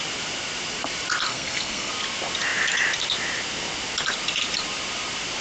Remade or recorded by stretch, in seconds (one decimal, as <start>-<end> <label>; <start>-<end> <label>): 0.0-1.3 recorded; 1.3-1.9 remade; 1.9-5.4 recorded